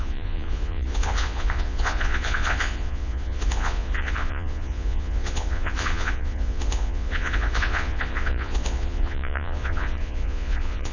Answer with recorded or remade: remade